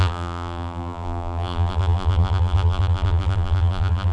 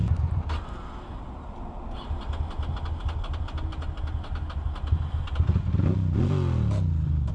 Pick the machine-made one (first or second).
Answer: first